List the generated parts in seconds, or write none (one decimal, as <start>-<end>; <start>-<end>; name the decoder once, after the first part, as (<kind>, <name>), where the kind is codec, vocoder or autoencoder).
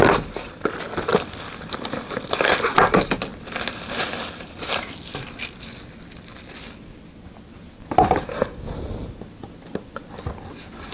1.1-2.5 (vocoder, BigVGAN v2); 3.3-7.3; 8.4-9.0